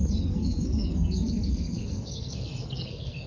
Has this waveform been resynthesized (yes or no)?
yes